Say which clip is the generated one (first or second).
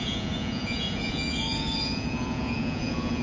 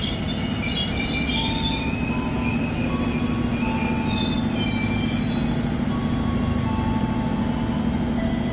first